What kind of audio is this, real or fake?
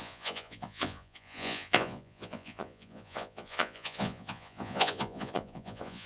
fake